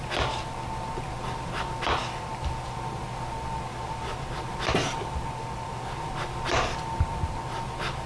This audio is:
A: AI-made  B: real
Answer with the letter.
A